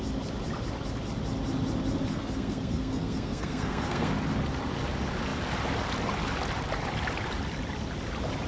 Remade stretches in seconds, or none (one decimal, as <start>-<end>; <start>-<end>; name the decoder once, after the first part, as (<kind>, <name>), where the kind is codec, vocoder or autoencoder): 2.1-4.1 (codec, SNAC)